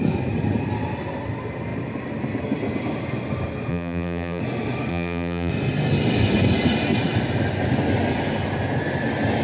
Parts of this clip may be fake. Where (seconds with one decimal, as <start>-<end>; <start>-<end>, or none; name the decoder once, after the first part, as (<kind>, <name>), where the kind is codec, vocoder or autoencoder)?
3.7-4.4 (vocoder, BigVGAN v2); 4.9-5.5